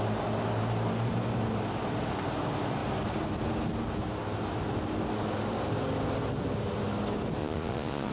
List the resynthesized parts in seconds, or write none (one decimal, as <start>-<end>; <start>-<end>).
7.4-8.1